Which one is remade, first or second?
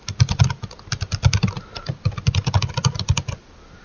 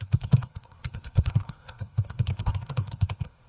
second